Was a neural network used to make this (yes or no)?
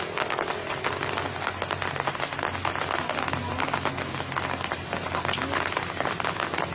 no